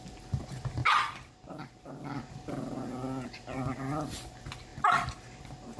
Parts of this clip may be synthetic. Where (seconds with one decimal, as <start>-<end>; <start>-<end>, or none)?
none